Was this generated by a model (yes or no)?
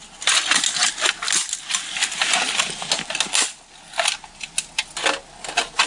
no